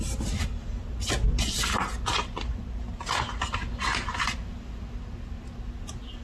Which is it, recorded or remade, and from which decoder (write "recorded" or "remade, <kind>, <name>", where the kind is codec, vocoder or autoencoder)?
recorded